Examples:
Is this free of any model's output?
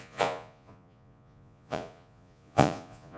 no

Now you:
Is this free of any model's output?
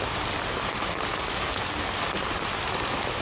yes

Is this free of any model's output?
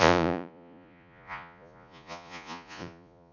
no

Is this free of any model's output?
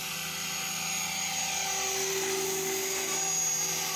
yes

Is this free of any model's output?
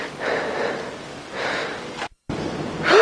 yes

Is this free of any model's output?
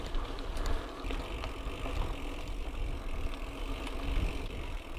yes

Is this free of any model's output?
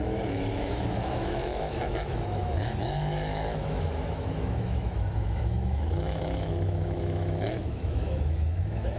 no